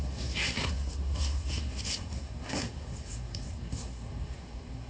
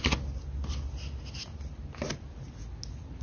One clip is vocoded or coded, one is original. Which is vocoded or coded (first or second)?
first